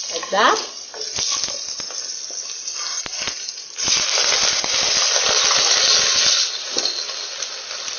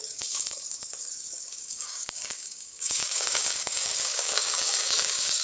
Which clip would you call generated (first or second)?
second